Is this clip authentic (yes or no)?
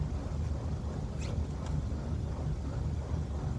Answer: yes